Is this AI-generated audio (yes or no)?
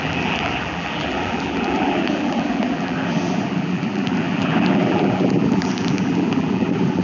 yes